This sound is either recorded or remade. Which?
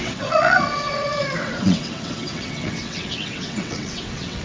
remade